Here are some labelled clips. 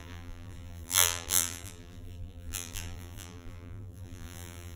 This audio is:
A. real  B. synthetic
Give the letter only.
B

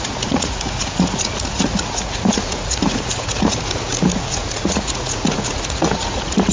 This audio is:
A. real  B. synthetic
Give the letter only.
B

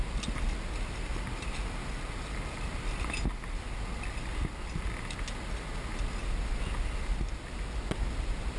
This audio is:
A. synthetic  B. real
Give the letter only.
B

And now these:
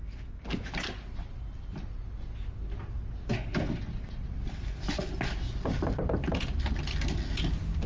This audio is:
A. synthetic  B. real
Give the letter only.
B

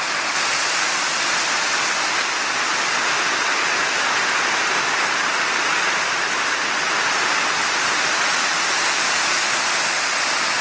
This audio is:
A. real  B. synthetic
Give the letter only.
A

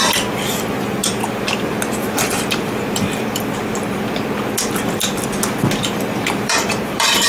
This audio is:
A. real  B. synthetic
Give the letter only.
B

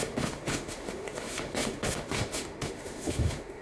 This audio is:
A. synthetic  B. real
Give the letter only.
A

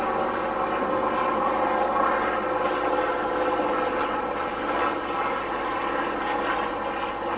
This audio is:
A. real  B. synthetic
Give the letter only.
A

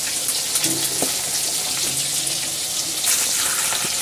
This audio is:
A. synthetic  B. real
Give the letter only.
B